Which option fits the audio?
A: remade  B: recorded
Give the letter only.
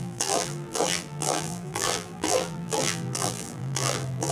A